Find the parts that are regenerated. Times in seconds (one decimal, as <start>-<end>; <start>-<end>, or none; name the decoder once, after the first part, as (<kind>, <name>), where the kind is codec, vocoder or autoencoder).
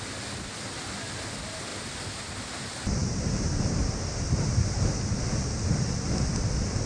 3.0-5.0 (vocoder, BigVGAN v2)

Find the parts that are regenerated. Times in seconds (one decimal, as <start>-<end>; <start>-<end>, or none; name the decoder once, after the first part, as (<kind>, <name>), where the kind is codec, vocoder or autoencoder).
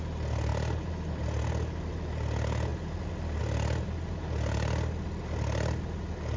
none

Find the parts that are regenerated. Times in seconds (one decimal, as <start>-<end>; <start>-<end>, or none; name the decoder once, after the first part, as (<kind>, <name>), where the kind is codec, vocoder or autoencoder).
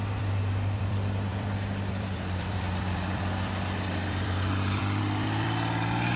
0.0-6.2 (vocoder, BigVGAN v2)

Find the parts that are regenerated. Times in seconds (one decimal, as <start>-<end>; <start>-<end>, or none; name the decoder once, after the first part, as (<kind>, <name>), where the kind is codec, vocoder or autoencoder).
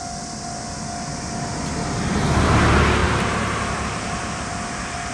3.0-3.7 (vocoder, BigVGAN v2)